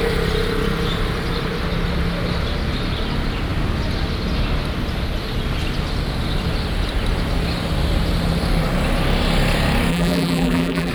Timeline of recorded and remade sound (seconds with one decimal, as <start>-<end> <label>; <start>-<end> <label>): 0.0-9.9 recorded; 9.9-10.9 remade